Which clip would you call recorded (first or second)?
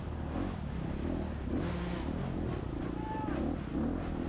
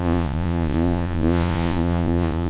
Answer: first